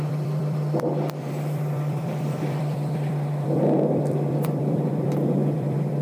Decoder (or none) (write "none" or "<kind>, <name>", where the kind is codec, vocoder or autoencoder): vocoder, BigVGAN v2